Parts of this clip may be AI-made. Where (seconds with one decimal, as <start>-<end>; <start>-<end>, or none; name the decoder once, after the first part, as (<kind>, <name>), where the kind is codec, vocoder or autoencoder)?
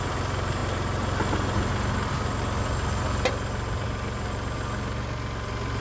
none